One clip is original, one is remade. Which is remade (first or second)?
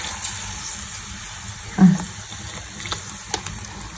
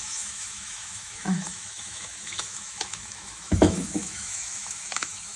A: second